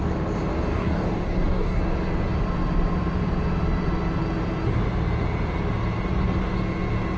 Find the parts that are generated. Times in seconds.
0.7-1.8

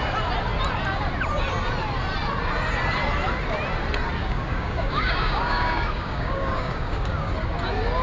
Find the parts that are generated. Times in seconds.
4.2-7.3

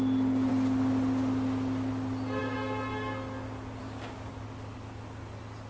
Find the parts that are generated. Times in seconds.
3.8-4.3